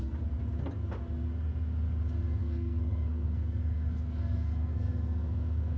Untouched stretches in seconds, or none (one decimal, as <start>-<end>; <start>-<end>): 0.0-2.4